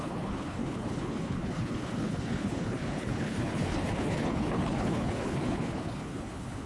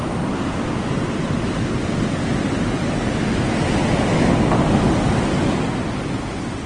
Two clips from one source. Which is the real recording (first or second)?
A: second